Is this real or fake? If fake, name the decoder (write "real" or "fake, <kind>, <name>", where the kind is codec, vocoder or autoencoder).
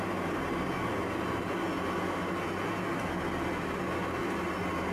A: real